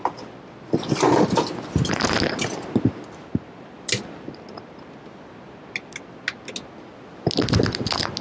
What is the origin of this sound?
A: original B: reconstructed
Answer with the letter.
A